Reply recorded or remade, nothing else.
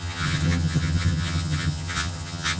remade